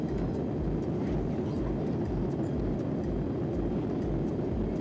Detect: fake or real real